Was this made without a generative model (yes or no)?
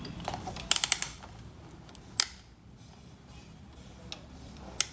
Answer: yes